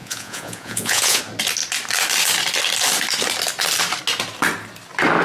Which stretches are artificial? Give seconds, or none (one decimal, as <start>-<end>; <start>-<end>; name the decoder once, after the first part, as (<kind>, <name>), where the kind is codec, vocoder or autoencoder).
0.0-1.2 (vocoder, Vocos)